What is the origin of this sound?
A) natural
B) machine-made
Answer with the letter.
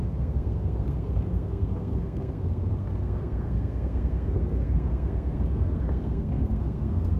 B